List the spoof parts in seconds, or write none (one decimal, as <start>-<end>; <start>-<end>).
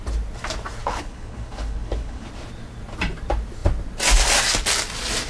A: 0.8-2.3